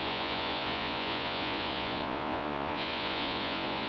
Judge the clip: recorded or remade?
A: remade